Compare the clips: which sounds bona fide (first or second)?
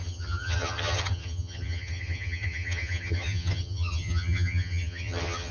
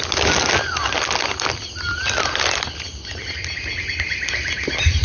second